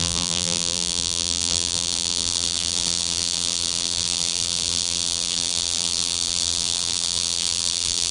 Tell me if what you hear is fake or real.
fake